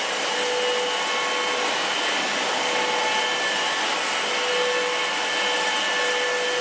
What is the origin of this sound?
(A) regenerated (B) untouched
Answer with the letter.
B